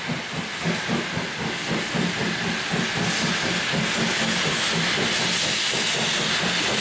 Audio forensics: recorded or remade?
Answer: recorded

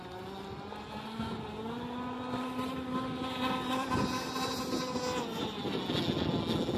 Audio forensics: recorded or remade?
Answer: recorded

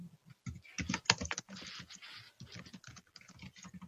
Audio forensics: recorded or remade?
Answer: recorded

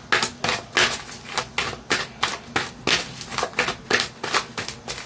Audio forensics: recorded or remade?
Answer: recorded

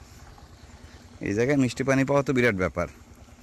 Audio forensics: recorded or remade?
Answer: recorded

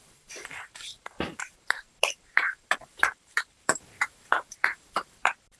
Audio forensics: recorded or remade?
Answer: remade